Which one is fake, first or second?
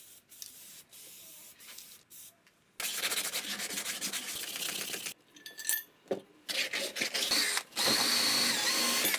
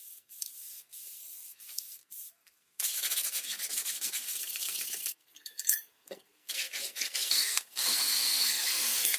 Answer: second